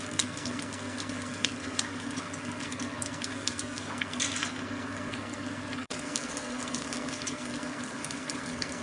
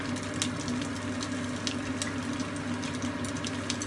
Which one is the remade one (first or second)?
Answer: first